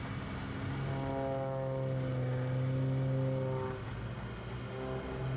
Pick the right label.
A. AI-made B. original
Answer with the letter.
B